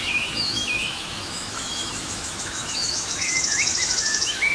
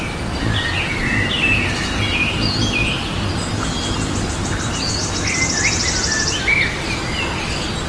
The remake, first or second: first